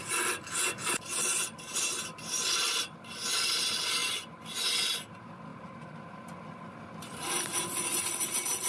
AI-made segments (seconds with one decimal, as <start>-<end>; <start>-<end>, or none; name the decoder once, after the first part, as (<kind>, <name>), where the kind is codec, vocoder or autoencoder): none